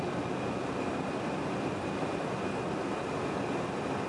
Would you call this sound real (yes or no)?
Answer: yes